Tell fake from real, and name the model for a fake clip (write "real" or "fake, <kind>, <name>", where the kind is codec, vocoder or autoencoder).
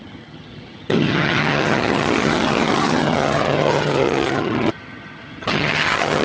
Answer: fake, vocoder, HiFi-GAN